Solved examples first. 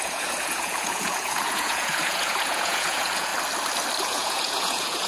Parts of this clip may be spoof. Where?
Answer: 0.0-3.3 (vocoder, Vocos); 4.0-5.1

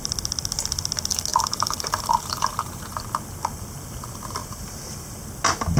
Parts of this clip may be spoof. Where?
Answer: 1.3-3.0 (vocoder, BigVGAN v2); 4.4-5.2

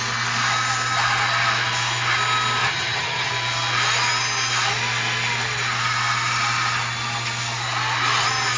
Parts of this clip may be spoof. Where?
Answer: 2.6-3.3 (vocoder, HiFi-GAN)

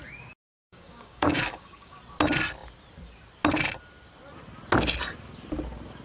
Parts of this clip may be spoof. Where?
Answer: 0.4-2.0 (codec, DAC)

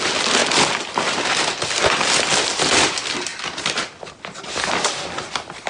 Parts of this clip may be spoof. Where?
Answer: none